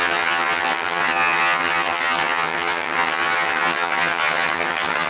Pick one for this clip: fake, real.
fake